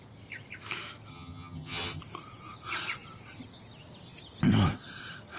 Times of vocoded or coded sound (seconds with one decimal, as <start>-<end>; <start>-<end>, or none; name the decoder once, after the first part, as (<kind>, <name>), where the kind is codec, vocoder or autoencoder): 1.1-2.0 (vocoder, HiFi-GAN)